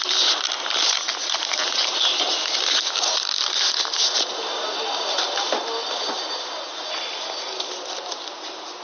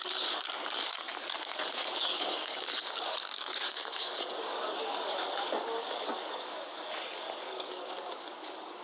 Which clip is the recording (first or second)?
first